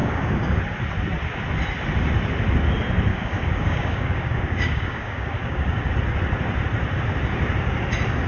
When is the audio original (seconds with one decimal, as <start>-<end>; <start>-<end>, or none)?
0.6-3.1; 5.9-8.3